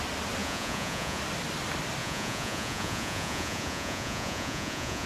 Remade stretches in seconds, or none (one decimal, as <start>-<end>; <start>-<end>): 0.4-1.2; 2.0-5.1